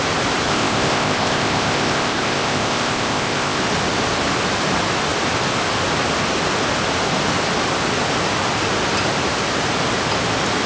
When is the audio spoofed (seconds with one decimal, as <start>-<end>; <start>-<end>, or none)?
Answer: 0.5-3.6